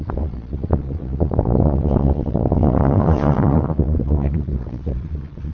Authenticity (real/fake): fake